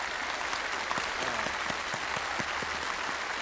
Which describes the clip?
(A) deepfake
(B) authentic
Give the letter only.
B